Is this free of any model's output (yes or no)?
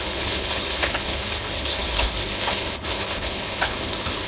no